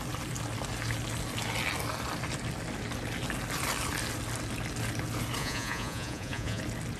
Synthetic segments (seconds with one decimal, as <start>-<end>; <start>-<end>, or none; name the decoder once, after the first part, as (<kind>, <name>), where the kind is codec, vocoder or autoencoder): 5.4-6.6 (vocoder, Vocos)